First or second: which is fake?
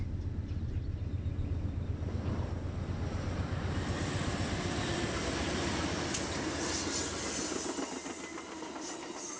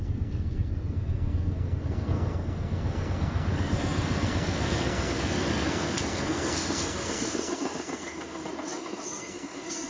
second